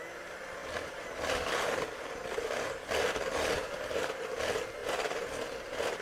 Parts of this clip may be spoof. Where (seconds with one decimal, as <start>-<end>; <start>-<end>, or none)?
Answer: 0.6-4.2; 4.8-6.0